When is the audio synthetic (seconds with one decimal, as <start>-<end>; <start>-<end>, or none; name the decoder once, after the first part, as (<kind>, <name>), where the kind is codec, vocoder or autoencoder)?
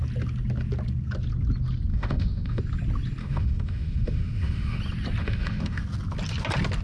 1.9-2.6 (autoencoder, DAC-VAE); 3.2-4.8; 5.2-5.8